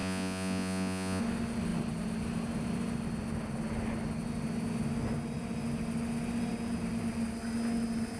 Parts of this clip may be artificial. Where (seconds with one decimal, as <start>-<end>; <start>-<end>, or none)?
0.0-1.2